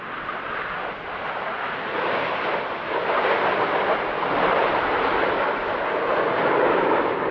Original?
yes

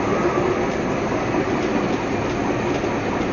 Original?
yes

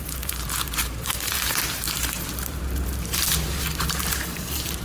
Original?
no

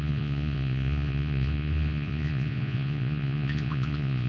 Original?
no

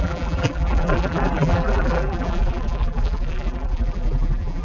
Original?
no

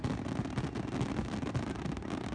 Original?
yes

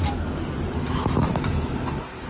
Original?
yes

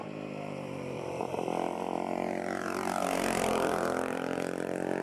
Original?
no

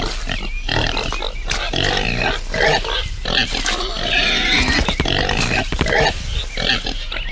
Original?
yes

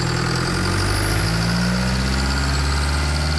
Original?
yes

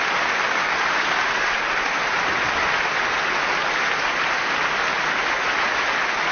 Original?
yes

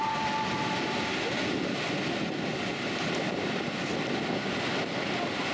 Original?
yes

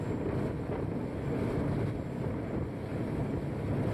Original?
yes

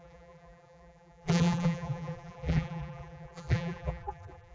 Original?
no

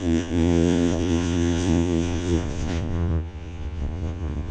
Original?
no